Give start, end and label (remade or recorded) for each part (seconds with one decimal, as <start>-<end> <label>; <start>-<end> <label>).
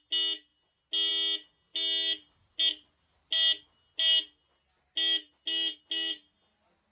0.0-6.9 recorded